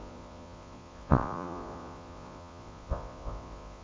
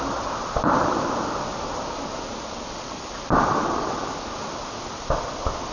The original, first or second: second